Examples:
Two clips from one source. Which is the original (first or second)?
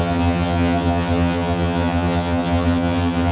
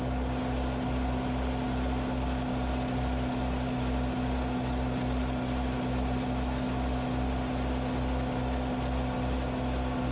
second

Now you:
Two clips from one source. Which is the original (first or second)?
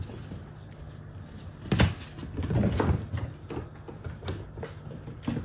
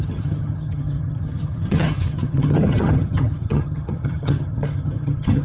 first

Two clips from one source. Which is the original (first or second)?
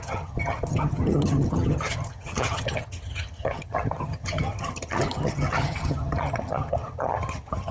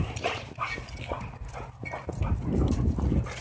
second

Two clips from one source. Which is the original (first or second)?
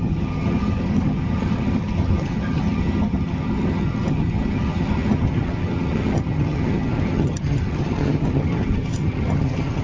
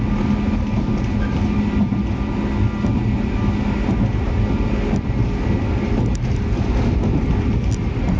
second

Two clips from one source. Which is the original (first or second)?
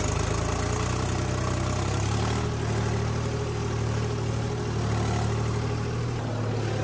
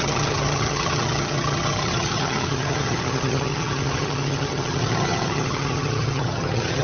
first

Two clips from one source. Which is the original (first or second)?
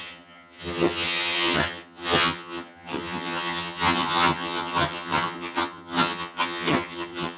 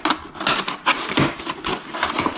second